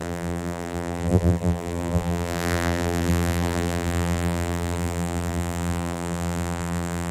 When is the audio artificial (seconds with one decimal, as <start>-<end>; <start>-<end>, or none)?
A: 0.0-7.1